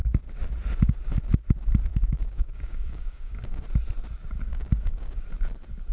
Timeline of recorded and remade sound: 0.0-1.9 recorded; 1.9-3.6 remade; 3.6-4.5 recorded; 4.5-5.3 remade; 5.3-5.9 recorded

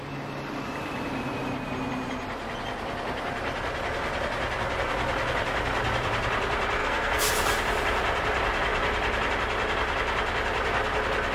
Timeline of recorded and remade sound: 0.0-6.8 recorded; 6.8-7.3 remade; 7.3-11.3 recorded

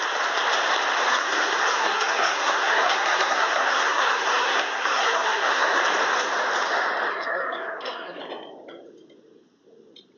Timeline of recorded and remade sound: 0.0-1.1 recorded; 1.1-5.8 remade; 5.8-7.1 recorded; 7.1-8.2 remade; 8.2-10.2 recorded